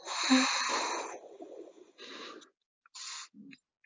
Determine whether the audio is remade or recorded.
recorded